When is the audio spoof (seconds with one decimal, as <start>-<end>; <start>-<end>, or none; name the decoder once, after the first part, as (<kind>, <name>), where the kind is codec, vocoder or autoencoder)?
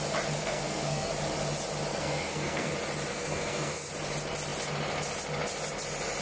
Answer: 0.4-1.1 (codec, SNAC); 1.9-2.7; 3.1-3.9